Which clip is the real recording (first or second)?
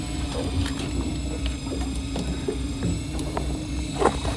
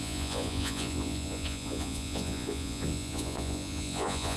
first